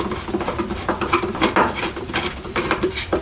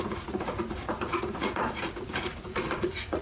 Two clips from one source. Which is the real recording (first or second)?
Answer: first